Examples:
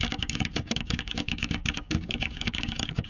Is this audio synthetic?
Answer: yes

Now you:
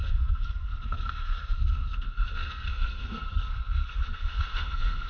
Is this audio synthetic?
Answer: yes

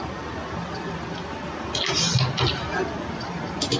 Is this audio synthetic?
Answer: no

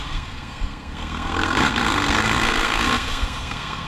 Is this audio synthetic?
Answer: yes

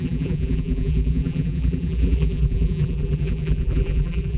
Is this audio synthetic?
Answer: yes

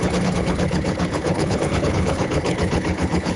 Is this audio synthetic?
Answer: yes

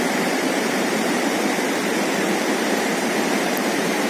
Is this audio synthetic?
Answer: yes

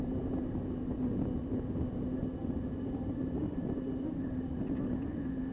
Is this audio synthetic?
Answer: no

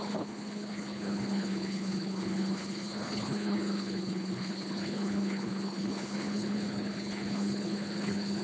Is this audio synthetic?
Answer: yes